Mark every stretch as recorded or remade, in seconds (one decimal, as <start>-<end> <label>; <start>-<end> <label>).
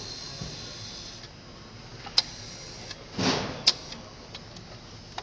0.0-5.2 recorded